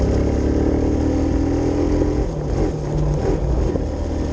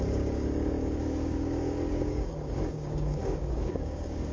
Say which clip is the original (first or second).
first